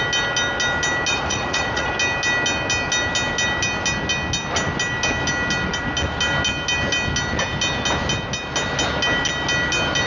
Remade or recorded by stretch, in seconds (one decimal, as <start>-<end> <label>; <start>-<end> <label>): 0.0-1.1 recorded; 1.1-1.9 remade; 1.9-10.1 recorded

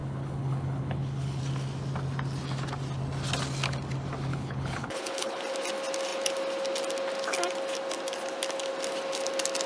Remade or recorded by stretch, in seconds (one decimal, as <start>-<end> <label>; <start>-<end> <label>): 0.0-1.4 remade; 1.4-4.3 recorded; 4.3-5.4 remade; 5.4-9.7 recorded

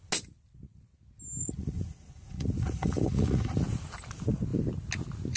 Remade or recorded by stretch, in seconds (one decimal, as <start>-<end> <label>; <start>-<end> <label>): 0.0-1.4 recorded; 1.4-3.6 remade; 3.6-5.4 recorded

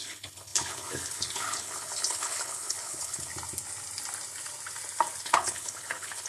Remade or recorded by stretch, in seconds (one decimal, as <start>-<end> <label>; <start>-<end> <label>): 0.0-3.3 remade; 3.3-5.2 recorded; 5.2-6.3 remade

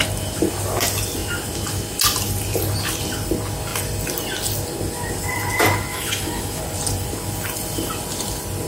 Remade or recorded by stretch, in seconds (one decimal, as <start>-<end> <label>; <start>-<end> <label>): 0.0-5.9 recorded; 5.9-6.6 remade; 6.6-8.7 recorded

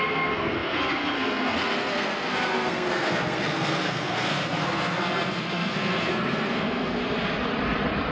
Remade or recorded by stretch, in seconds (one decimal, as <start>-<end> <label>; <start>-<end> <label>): 0.0-7.0 remade; 7.0-8.1 recorded